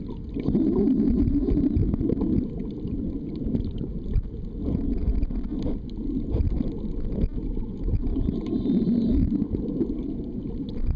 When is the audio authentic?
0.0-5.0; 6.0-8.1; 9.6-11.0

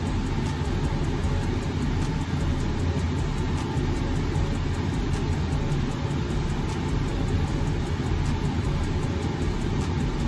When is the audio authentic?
0.0-10.3

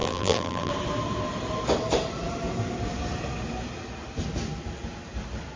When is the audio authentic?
0.7-5.6

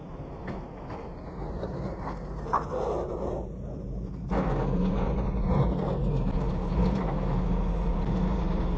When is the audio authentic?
4.3-8.8